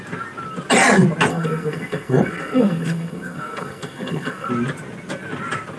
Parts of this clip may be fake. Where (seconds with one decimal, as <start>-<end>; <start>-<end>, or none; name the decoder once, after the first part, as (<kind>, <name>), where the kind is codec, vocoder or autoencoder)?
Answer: 1.3-4.5 (codec, SNAC)